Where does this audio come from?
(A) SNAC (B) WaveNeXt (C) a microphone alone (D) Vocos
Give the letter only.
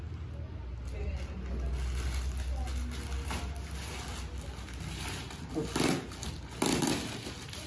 C